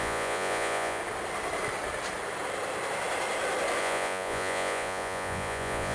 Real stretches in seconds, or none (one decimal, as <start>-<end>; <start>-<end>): 1.0-3.8